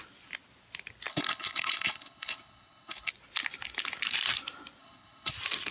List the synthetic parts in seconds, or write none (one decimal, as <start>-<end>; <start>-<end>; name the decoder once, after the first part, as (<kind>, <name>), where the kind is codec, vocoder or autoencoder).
1.1-3.1 (codec, HILCodec); 4.8-5.3